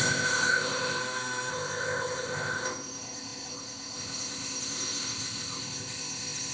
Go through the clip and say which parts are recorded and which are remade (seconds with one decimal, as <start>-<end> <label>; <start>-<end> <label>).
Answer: 0.0-1.0 remade; 1.0-1.5 recorded; 1.5-6.5 remade